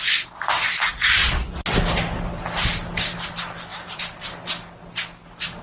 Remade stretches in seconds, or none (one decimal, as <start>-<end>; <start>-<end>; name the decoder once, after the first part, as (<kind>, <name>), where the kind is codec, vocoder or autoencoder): 3.7-4.3 (vocoder, BigVGAN v2)